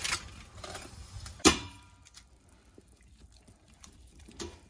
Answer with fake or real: fake